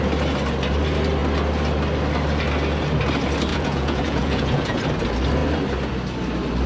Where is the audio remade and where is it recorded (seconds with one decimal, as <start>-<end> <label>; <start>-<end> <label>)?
0.0-3.5 recorded; 3.5-4.8 remade; 4.8-6.7 recorded